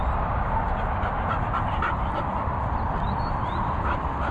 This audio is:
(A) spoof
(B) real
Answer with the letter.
B